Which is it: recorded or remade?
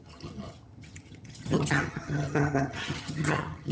remade